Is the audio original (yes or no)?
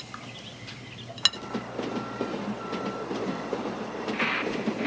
yes